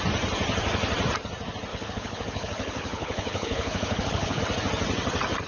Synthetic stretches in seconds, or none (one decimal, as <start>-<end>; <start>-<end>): 1.7-4.4